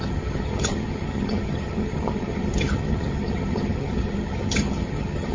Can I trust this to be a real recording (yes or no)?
no